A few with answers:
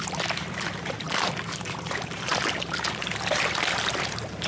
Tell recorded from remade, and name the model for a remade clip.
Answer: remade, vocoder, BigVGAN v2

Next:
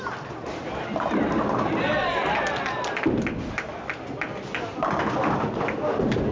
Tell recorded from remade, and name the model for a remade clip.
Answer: recorded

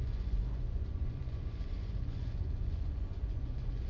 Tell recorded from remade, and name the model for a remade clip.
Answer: remade, vocoder, Vocos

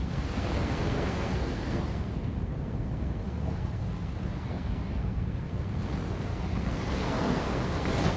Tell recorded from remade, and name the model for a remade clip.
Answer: remade, codec, SNAC